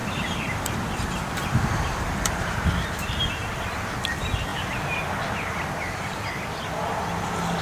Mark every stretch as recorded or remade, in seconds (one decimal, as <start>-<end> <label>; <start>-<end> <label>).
0.0-2.6 remade; 2.6-7.6 recorded